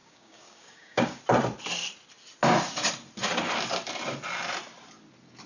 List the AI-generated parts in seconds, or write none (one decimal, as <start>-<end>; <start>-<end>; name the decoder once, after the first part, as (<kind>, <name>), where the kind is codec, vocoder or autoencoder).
0.0-1.2 (codec, DAC)

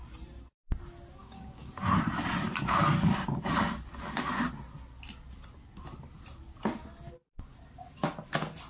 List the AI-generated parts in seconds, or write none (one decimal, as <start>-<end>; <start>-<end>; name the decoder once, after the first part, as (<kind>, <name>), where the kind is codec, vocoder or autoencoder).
1.2-1.7 (codec, DAC)

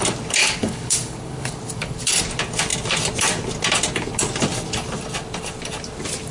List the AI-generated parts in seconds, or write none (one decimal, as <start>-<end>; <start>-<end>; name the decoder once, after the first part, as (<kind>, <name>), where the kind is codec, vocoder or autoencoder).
0.4-2.2 (codec, DAC)

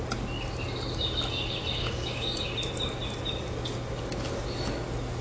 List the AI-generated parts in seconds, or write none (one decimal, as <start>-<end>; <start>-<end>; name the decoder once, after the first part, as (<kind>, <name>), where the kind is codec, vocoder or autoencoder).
1.8-2.4 (codec, DAC)